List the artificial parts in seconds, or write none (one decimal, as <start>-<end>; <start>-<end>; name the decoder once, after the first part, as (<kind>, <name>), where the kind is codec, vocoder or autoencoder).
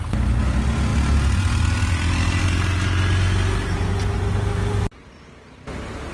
none